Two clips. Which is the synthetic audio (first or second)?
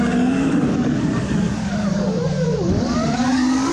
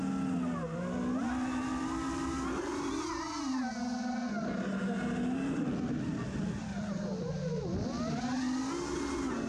first